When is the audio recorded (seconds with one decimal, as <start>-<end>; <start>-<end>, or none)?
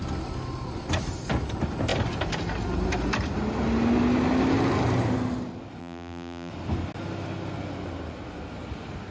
0.0-5.8; 6.5-9.1